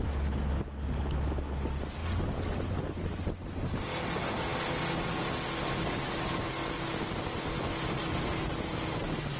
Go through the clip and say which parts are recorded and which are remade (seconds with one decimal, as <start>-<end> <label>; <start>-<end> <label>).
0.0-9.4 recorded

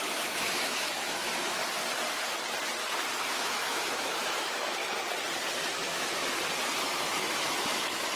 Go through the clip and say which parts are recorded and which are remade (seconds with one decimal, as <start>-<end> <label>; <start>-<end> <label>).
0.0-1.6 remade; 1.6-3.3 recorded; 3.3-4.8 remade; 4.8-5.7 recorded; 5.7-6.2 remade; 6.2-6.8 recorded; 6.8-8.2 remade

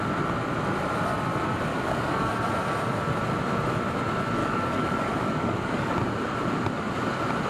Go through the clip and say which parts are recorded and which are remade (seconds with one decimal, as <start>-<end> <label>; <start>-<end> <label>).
0.0-1.7 recorded; 1.7-2.3 remade; 2.3-4.4 recorded; 4.4-5.9 remade; 5.9-7.5 recorded

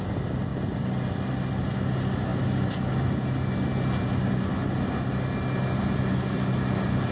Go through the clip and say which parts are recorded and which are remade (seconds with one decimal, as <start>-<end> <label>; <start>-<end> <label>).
0.0-7.1 recorded

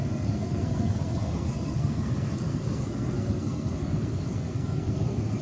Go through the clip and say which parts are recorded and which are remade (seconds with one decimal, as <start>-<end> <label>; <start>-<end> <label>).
0.0-5.4 remade